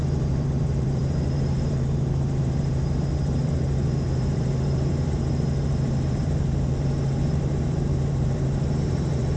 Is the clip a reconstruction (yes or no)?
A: yes